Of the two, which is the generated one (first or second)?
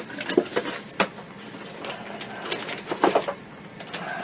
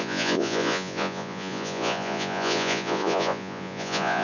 second